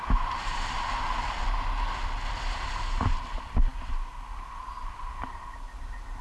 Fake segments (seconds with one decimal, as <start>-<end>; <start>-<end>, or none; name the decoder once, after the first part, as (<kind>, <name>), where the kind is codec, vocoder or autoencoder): none